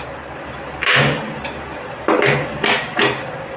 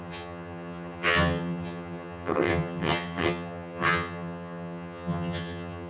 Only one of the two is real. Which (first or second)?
first